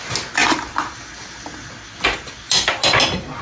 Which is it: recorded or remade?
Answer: recorded